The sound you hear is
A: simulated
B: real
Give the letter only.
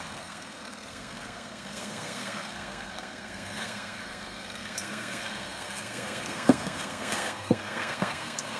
A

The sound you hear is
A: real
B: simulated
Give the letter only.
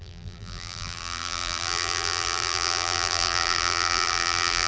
B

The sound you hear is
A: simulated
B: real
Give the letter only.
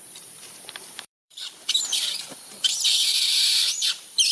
A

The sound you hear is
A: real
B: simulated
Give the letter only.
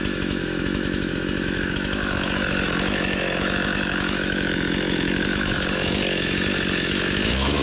B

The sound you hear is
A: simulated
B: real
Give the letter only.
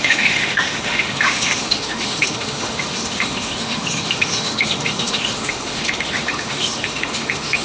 A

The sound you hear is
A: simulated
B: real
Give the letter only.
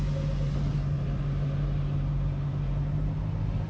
B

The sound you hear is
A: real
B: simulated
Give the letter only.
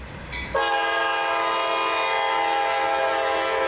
A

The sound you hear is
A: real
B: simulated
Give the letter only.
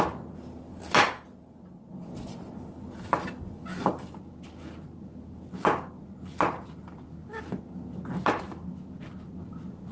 A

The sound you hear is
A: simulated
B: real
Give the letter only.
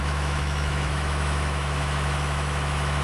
A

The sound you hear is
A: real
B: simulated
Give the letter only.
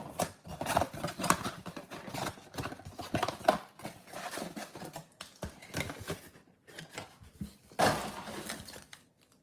A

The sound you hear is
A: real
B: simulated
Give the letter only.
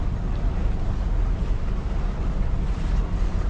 A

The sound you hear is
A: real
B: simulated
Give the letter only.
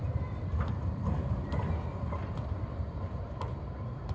B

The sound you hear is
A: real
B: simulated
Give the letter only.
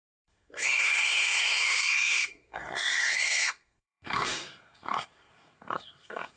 B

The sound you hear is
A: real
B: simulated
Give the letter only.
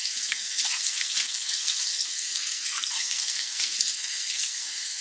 B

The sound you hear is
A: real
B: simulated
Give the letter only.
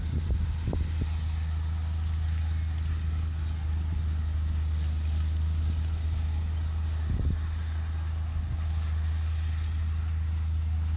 A